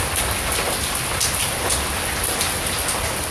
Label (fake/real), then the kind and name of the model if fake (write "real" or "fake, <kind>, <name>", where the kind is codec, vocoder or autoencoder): real